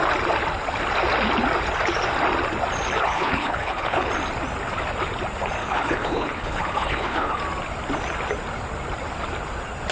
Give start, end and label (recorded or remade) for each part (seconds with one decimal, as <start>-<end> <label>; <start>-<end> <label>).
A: 0.0-3.0 recorded; 3.0-4.1 remade; 4.1-5.6 recorded; 5.6-7.4 remade; 7.4-9.9 recorded